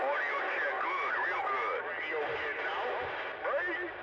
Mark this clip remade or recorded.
recorded